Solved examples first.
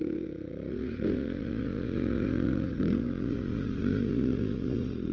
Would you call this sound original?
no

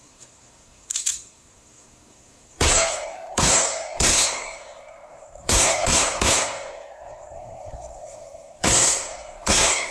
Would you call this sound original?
no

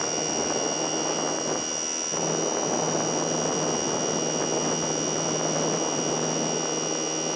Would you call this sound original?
yes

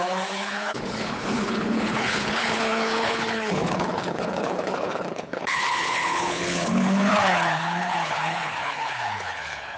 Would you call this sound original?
no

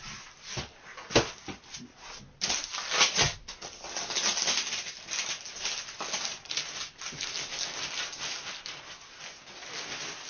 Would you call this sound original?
yes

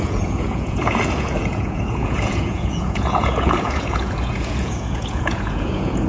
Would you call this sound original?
no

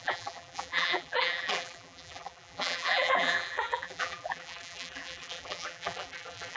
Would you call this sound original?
no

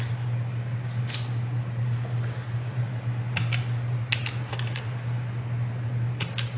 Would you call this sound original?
yes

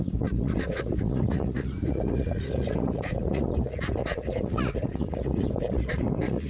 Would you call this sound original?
no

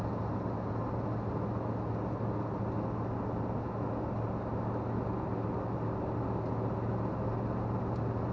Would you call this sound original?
yes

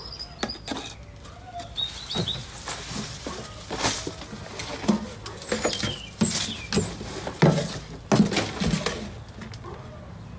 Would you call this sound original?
yes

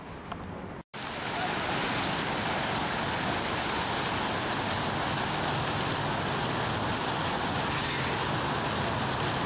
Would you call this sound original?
yes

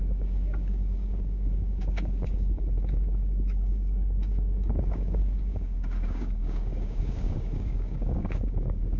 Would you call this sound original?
no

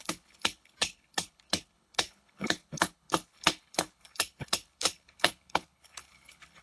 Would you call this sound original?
no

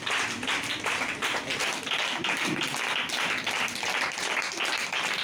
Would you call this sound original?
yes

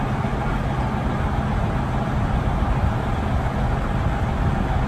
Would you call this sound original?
yes